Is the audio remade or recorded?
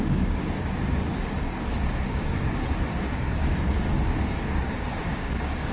remade